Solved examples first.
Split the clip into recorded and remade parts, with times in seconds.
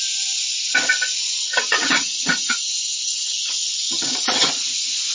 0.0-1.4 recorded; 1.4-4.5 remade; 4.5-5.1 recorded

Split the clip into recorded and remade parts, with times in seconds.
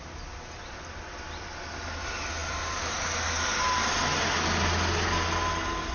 0.0-5.9 recorded